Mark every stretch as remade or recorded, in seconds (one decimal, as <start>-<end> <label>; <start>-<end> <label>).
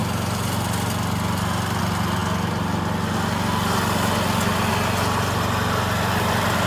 0.0-6.7 recorded